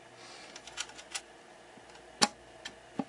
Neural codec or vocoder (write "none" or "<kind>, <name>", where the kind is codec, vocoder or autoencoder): none